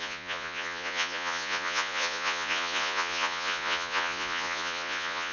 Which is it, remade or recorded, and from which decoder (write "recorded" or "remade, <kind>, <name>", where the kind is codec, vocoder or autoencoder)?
remade, vocoder, Vocos